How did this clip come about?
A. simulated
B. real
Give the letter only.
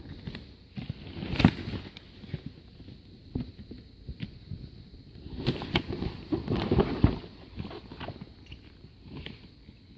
B